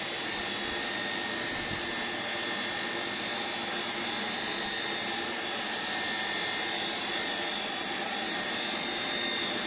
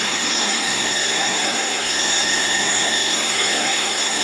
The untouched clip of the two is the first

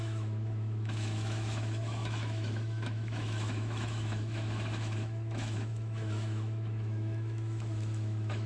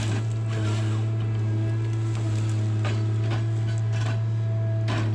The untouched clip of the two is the second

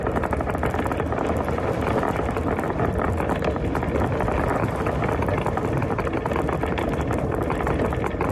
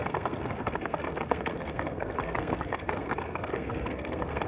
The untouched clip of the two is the first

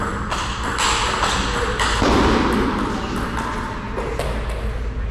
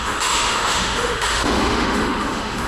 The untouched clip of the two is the first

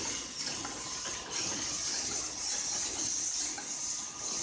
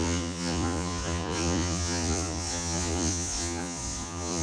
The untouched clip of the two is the first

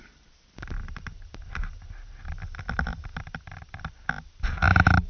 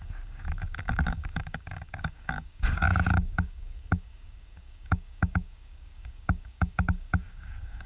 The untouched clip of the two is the first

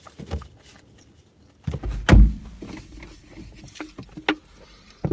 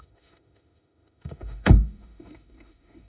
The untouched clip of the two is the first